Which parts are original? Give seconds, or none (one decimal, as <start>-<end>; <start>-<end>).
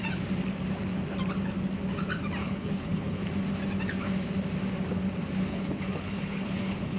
0.0-2.4; 3.2-5.5